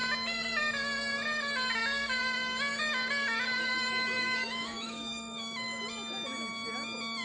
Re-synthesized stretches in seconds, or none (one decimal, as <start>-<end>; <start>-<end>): 3.9-5.8